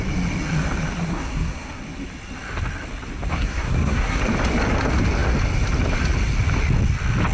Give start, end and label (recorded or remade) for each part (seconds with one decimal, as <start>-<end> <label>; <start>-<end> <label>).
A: 0.0-1.1 recorded; 1.1-1.8 remade; 1.8-3.3 recorded; 3.3-4.2 remade; 4.2-7.3 recorded